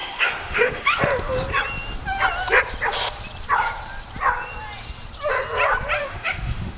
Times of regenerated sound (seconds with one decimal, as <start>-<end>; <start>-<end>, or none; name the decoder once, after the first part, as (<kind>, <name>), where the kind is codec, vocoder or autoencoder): 0.0-1.0 (autoencoder, DAC-VAE); 6.0-6.8